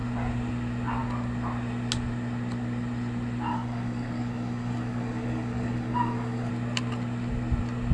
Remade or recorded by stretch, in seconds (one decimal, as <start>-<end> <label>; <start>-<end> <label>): 0.0-3.5 recorded; 3.5-6.5 remade; 6.5-7.9 recorded